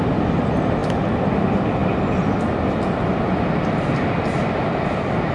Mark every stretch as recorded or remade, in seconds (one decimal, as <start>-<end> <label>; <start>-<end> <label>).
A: 0.0-5.3 recorded

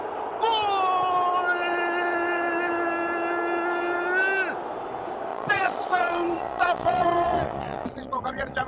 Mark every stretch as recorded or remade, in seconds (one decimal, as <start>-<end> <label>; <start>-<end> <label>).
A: 0.0-5.3 recorded; 5.3-8.7 remade

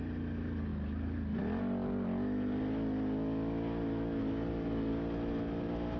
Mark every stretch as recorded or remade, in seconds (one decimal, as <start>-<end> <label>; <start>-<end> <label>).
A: 0.0-6.0 recorded

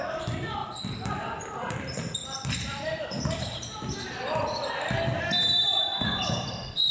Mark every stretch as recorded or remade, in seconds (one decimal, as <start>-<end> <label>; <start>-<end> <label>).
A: 0.0-0.6 recorded; 0.6-4.7 remade; 4.7-5.9 recorded; 5.9-6.9 remade

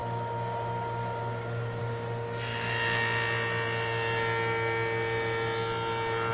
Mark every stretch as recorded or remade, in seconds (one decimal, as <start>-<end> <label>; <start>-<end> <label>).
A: 0.0-6.3 recorded